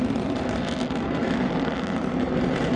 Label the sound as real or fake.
fake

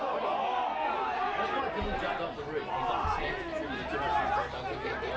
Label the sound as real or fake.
real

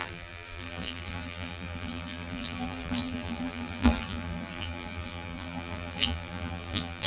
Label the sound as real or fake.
fake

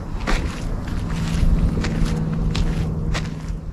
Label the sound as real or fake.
real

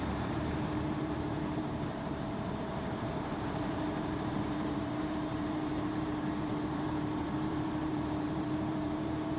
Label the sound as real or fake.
fake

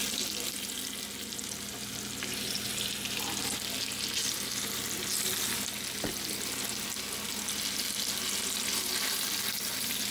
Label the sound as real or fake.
real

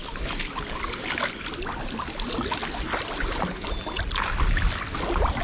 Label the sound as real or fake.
real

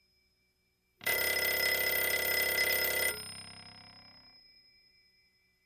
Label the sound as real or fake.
fake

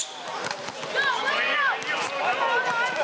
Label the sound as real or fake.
real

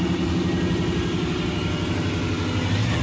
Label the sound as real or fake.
real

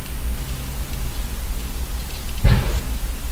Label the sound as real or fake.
real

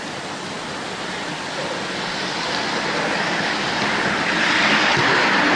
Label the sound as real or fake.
fake